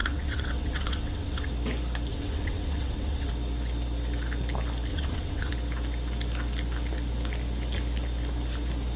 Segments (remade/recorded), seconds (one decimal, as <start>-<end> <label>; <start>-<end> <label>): 0.0-1.5 remade; 1.5-2.1 recorded; 2.1-3.3 remade; 3.3-4.9 recorded; 4.9-5.5 remade; 5.5-9.0 recorded